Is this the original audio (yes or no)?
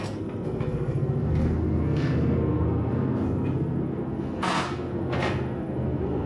no